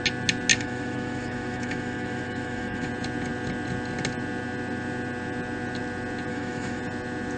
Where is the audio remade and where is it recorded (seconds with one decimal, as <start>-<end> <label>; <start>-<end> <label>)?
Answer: 0.0-0.5 recorded; 0.5-2.9 remade; 2.9-6.3 recorded; 6.3-6.8 remade; 6.8-7.4 recorded